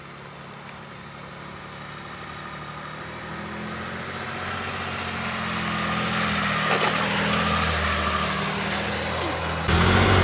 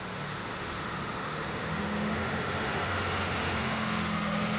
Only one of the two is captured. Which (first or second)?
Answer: first